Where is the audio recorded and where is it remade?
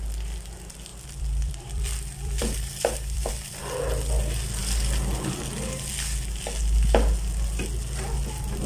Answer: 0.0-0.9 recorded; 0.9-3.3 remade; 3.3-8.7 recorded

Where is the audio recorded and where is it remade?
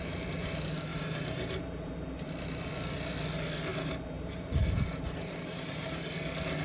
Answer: 0.0-0.9 recorded; 0.9-1.9 remade; 1.9-3.7 recorded; 3.7-6.0 remade; 6.0-6.6 recorded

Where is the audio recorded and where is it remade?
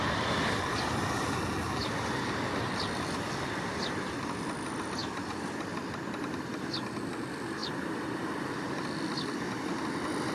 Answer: 0.0-5.0 recorded; 5.0-6.6 remade; 6.6-7.6 recorded; 7.6-8.6 remade; 8.6-10.3 recorded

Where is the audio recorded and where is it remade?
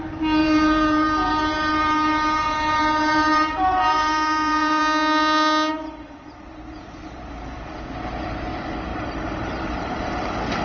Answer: 0.0-0.4 recorded; 0.4-4.8 remade; 4.8-5.7 recorded; 5.7-7.9 remade; 7.9-8.9 recorded; 8.9-10.1 remade; 10.1-10.6 recorded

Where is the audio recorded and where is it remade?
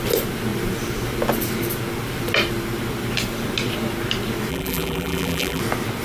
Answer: 0.0-4.5 recorded; 4.5-5.6 remade; 5.6-6.0 recorded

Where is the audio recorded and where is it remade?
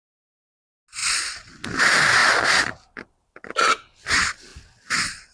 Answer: 0.0-5.3 recorded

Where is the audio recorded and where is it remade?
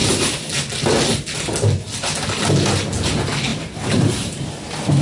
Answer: 0.0-3.5 recorded; 3.5-4.4 remade; 4.4-5.0 recorded